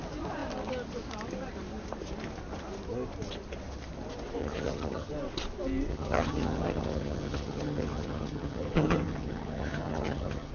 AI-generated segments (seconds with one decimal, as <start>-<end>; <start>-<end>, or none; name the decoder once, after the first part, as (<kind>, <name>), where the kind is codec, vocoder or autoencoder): 4.4-5.1 (vocoder, HiFi-GAN); 5.9-10.5